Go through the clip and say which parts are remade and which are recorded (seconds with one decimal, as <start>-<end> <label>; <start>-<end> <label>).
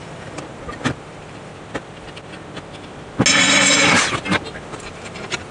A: 0.0-1.5 remade; 1.5-4.8 recorded; 4.8-5.5 remade